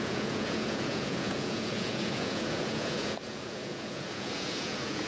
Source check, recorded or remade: remade